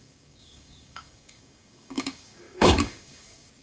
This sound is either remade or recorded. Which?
remade